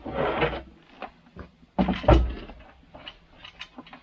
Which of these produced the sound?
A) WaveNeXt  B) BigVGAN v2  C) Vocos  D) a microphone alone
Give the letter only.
D